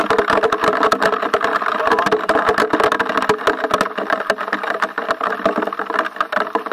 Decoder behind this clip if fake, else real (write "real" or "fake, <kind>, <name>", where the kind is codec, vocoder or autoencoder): real